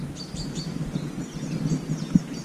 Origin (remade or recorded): recorded